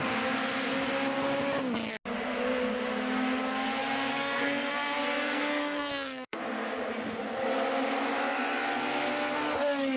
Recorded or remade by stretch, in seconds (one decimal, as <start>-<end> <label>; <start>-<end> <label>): 0.0-4.1 recorded; 4.1-6.4 remade; 6.4-10.0 recorded

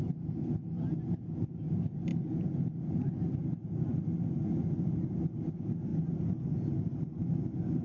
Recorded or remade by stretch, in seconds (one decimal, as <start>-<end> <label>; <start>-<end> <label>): 0.0-7.8 recorded

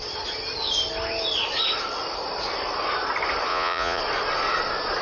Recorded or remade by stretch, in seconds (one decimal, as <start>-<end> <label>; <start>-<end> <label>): 0.0-3.5 recorded; 3.5-4.0 remade; 4.0-5.0 recorded

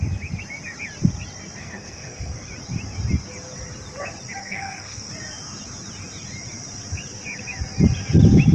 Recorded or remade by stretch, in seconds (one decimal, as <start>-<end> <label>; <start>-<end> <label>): 0.0-1.6 recorded; 1.6-2.5 remade; 2.5-4.4 recorded; 4.4-5.1 remade; 5.1-8.5 recorded

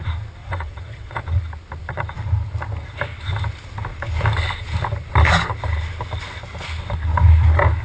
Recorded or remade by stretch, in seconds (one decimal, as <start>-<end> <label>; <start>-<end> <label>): 0.0-0.4 recorded; 0.4-1.2 remade; 1.2-7.8 recorded

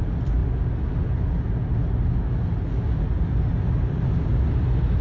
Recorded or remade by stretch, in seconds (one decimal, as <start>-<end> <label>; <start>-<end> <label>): 0.0-5.0 recorded

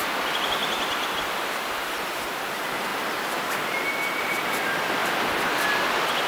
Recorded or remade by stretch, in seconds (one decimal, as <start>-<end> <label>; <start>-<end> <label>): 0.0-0.6 remade; 0.6-2.1 recorded; 2.1-2.9 remade; 2.9-4.2 recorded; 4.2-5.0 remade; 5.0-5.7 recorded; 5.7-6.3 remade

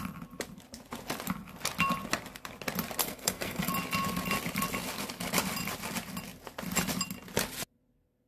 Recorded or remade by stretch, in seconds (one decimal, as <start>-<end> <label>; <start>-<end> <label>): 0.0-3.0 recorded; 3.0-3.7 remade; 3.7-8.3 recorded